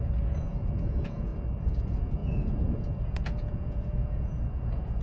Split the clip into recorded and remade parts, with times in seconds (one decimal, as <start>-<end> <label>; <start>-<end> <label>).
0.0-1.3 remade; 1.3-1.8 recorded; 1.8-5.0 remade